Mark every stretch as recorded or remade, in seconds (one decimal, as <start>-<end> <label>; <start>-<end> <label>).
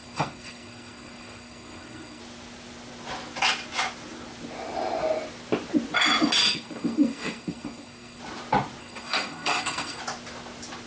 0.0-2.2 remade; 2.2-6.4 recorded; 6.4-8.2 remade; 8.2-8.8 recorded; 8.8-10.0 remade; 10.0-10.9 recorded